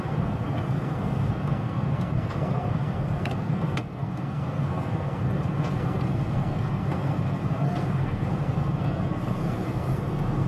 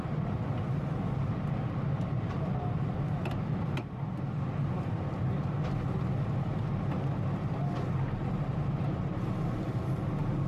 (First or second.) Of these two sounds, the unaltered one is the second